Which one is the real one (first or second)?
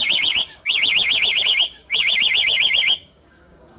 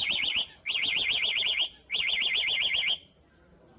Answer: second